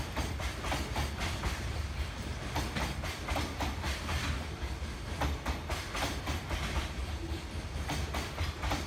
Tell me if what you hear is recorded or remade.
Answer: recorded